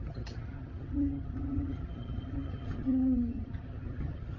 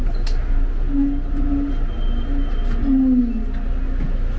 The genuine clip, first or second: second